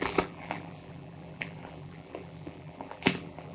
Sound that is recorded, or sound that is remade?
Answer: remade